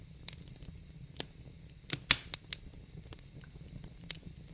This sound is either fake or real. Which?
real